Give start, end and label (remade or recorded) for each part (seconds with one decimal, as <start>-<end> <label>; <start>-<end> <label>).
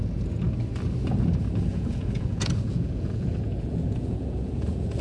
0.0-1.7 recorded; 1.7-5.0 remade